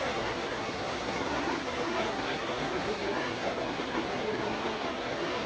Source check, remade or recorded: remade